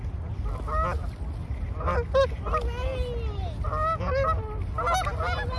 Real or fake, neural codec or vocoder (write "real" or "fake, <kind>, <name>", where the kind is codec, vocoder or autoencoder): real